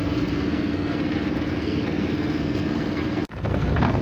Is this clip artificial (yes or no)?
yes